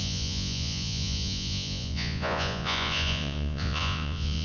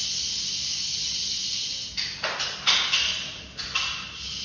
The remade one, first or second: first